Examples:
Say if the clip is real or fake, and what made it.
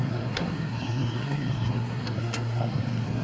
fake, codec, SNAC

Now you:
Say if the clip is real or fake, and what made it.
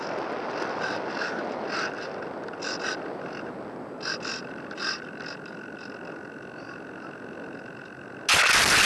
real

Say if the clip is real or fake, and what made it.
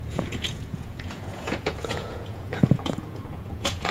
fake, vocoder, Vocos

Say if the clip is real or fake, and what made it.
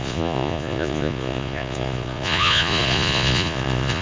fake, vocoder, Vocos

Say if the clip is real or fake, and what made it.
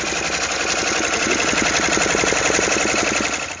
real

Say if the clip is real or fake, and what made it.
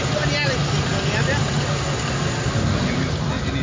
real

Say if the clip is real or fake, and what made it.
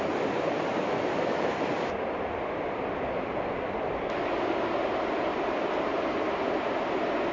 real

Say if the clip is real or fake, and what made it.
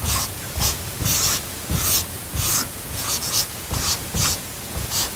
fake, vocoder, Vocos